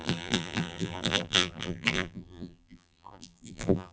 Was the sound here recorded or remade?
remade